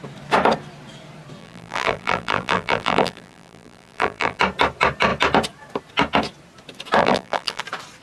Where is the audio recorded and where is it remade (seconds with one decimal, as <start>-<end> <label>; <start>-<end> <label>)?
0.0-1.4 recorded; 1.4-4.4 remade; 4.4-7.0 recorded; 7.0-7.6 remade; 7.6-8.0 recorded

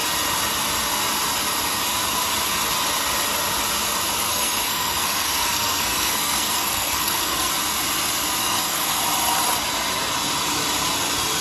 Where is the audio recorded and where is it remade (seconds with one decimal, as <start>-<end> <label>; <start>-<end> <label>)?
0.0-4.3 recorded; 4.3-7.5 remade; 7.5-8.4 recorded; 8.4-9.0 remade; 9.0-11.4 recorded

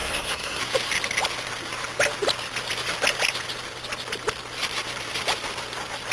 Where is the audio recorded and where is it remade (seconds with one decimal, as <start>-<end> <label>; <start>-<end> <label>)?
0.0-0.6 remade; 0.6-6.1 recorded

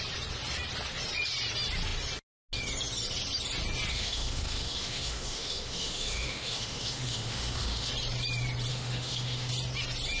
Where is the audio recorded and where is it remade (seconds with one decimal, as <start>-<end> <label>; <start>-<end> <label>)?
0.0-3.9 recorded; 3.9-7.9 remade; 7.9-8.7 recorded; 8.7-9.5 remade; 9.5-10.2 recorded

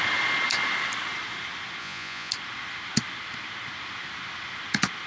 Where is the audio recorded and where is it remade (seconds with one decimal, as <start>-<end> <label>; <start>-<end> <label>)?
0.0-1.8 recorded; 1.8-2.3 remade; 2.3-5.1 recorded